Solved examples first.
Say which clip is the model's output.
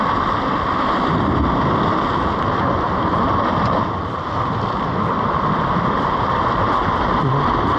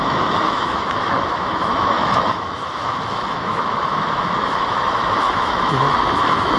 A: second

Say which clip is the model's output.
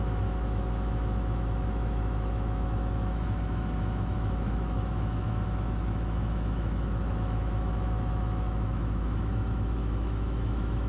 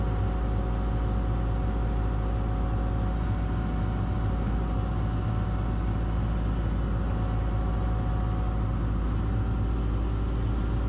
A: first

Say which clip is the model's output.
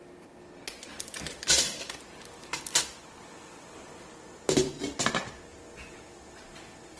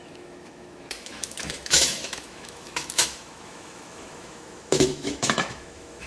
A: second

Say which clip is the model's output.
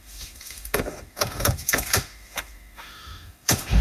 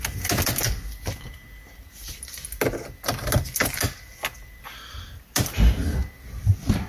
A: first